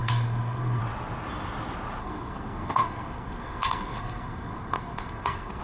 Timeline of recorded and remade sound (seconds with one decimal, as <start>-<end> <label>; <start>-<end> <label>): 0.0-0.8 remade; 0.8-2.0 recorded; 2.0-5.6 remade